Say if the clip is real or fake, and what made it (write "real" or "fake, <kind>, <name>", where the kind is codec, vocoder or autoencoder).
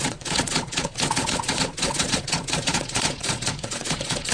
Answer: fake, vocoder, Vocos